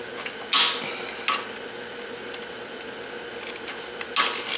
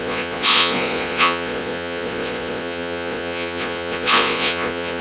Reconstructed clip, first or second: second